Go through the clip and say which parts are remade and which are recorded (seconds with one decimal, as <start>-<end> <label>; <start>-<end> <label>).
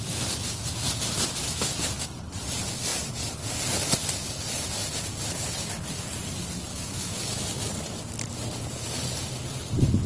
0.0-6.7 recorded; 6.7-7.6 remade; 7.6-10.1 recorded